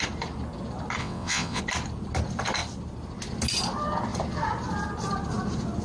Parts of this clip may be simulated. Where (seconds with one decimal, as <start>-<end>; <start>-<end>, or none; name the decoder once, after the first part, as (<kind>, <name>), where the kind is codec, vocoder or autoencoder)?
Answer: 1.0-1.6 (vocoder, WaveNeXt)